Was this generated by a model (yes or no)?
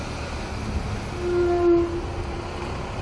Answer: no